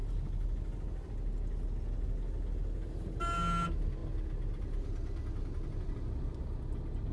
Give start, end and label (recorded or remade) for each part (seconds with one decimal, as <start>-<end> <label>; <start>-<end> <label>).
0.0-7.1 recorded